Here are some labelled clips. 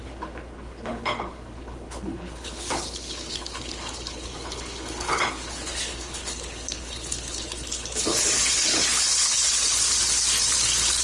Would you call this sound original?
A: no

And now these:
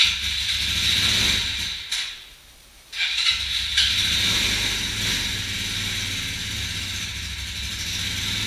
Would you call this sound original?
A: yes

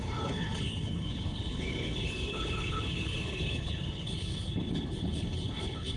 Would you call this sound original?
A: no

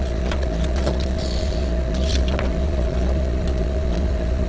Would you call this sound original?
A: no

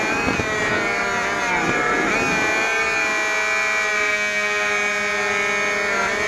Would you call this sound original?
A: yes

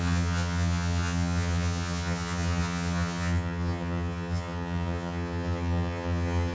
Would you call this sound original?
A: no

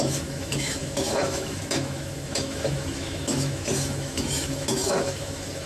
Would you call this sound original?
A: no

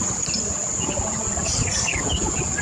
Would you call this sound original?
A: yes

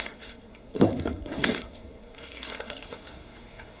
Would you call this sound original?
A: no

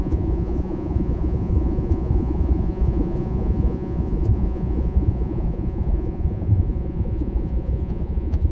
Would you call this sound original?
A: no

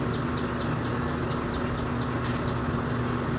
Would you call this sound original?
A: yes